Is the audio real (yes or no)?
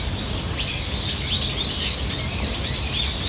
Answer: yes